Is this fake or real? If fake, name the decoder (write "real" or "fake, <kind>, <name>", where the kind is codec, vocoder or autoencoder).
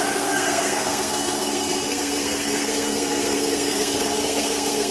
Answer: fake, codec, SNAC